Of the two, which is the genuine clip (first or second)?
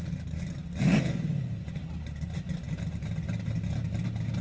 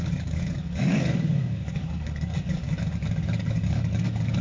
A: first